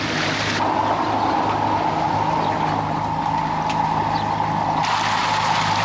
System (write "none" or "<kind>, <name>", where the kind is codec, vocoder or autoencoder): none